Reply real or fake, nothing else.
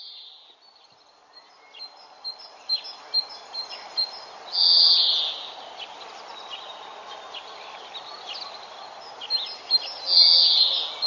real